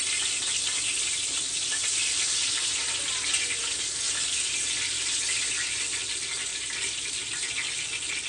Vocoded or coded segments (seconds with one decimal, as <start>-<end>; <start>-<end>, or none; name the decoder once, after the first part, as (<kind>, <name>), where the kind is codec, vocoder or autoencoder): none